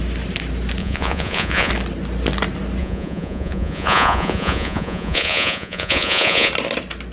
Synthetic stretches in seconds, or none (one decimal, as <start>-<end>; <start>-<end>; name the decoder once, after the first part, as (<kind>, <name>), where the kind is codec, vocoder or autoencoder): 0.8-1.7 (vocoder, Vocos); 2.8-6.5

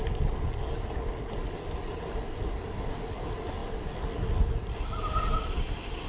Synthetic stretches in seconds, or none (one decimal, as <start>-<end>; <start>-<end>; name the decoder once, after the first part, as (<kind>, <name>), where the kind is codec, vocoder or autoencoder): none

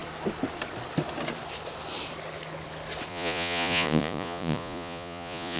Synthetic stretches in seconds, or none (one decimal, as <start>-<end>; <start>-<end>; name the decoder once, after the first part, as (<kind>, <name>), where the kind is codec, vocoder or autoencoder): 3.1-5.6 (vocoder, Vocos)

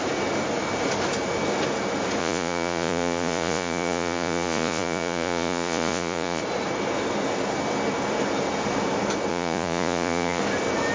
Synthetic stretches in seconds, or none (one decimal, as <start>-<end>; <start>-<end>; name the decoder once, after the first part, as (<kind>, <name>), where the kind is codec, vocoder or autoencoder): 2.2-6.4 (vocoder, Vocos); 9.3-10.4

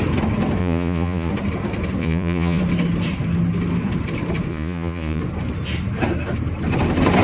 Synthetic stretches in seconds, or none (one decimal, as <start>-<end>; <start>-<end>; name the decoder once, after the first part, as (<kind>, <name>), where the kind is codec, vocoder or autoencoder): 0.6-1.3 (vocoder, Vocos); 2.0-2.6; 4.5-5.2

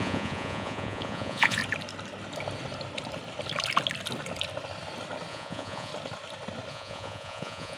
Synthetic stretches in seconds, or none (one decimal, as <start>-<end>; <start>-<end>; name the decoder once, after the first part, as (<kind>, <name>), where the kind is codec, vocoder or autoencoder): 0.0-1.6 (vocoder, Vocos); 5.3-5.9; 6.7-7.8

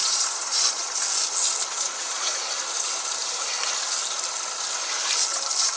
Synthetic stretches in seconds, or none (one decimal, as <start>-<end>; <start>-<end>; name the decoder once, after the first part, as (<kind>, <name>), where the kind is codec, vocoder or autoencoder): 0.0-0.9 (vocoder, Vocos); 1.7-2.5